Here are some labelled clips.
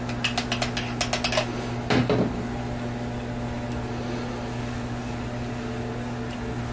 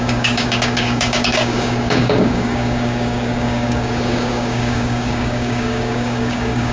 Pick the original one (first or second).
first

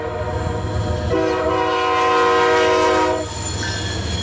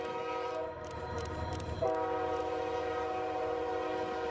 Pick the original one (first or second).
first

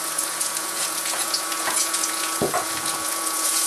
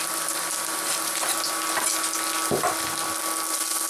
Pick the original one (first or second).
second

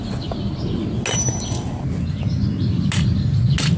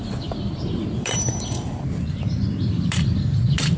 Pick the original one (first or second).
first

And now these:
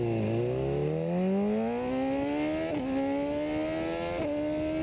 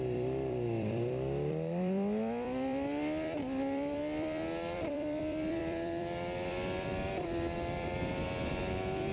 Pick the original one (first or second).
first